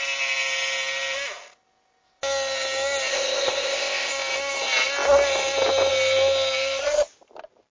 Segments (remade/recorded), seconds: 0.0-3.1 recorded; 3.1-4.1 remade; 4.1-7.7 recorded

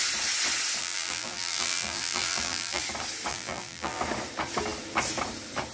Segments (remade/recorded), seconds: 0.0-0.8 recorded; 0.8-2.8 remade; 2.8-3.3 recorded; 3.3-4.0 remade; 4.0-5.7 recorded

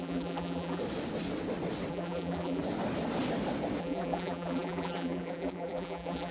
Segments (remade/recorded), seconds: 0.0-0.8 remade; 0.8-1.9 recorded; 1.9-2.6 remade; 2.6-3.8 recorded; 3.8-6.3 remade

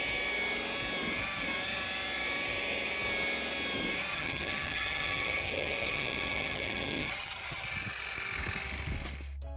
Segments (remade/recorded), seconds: 0.0-4.1 recorded; 4.1-7.6 remade; 7.6-9.6 recorded

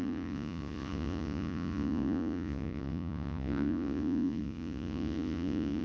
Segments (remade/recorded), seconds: 0.0-5.8 remade

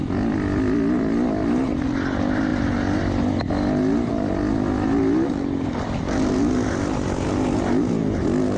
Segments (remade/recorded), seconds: 0.0-8.6 recorded

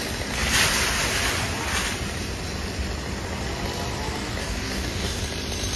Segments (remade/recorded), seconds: 0.0-4.4 recorded; 4.4-5.2 remade; 5.2-5.8 recorded